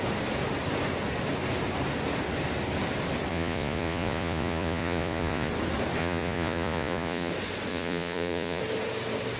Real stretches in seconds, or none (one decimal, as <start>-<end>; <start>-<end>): 0.0-3.3; 5.5-6.0; 7.3-7.7; 8.6-9.4

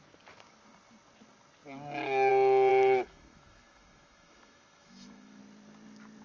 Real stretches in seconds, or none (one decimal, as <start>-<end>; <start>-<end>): 0.0-2.7; 5.4-6.2

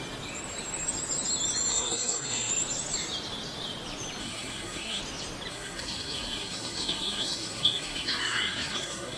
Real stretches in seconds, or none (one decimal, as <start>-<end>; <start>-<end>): 0.0-1.7; 2.5-4.2; 5.0-5.5